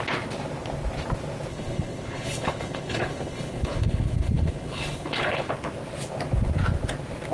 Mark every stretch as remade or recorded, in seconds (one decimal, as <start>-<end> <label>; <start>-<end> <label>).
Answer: 0.0-1.5 recorded; 1.5-5.5 remade; 5.5-7.3 recorded